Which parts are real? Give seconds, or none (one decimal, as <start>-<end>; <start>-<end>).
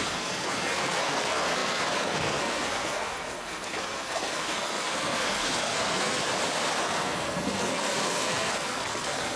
6.2-6.8